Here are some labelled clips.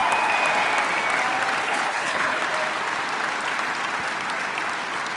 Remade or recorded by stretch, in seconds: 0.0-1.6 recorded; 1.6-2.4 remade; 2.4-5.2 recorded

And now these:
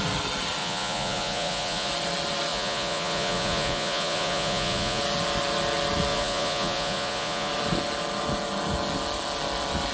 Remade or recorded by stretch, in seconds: 0.0-0.6 recorded; 0.6-1.9 remade; 1.9-2.5 recorded; 2.5-5.0 remade; 5.0-6.1 recorded; 6.1-7.5 remade; 7.5-9.9 recorded

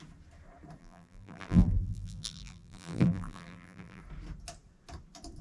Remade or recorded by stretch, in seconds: 0.0-0.8 recorded; 0.8-4.0 remade; 4.0-5.4 recorded

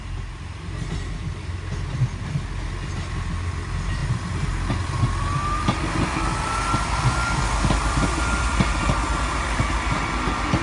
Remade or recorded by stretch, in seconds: 0.0-10.6 recorded

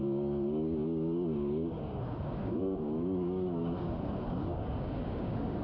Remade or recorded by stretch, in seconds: 0.0-5.6 remade

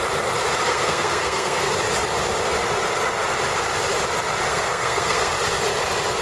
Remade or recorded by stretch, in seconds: 0.0-0.6 recorded; 0.6-1.7 remade; 1.7-4.5 recorded; 4.5-5.3 remade; 5.3-6.2 recorded